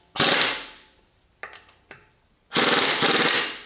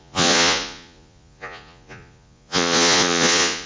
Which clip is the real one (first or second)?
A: first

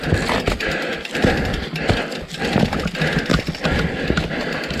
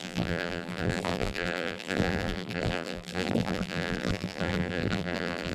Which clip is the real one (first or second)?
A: first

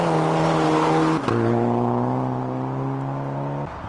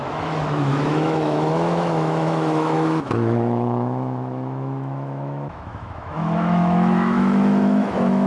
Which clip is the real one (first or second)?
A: first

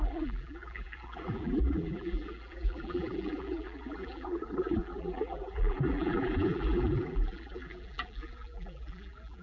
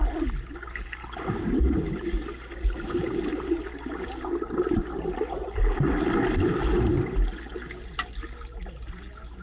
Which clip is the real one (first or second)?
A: second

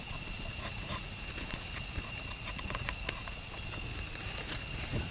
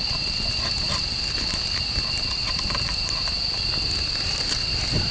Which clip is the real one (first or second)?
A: second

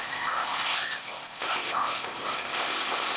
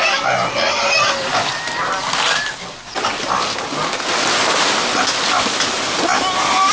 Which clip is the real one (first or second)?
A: second